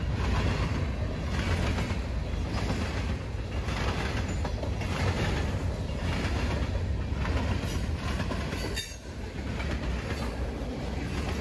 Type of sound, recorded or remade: recorded